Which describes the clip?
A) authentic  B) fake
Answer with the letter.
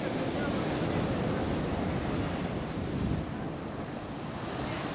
A